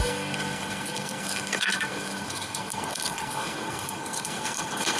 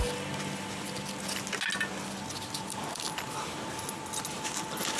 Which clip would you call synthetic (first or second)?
first